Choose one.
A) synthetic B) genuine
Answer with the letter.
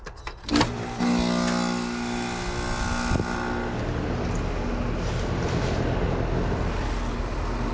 B